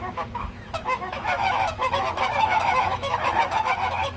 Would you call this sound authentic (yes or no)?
no